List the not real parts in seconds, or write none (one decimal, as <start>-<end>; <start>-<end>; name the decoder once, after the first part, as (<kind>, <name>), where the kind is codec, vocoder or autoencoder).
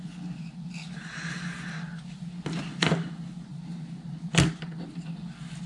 none